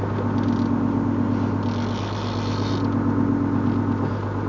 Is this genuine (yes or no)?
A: yes